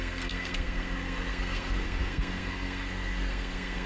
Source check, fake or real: fake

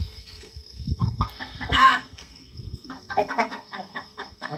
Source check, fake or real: fake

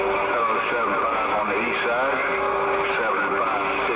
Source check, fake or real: real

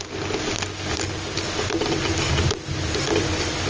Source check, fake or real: real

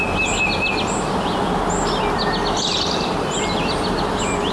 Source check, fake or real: real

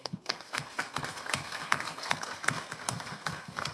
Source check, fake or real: fake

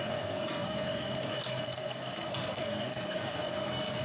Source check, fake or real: fake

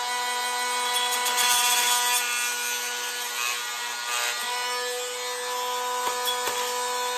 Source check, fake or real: real